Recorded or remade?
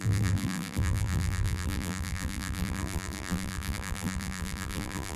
remade